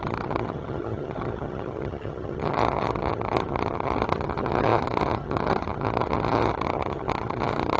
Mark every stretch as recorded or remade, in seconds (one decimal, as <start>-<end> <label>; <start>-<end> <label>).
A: 0.0-7.8 remade